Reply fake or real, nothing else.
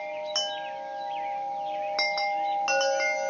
real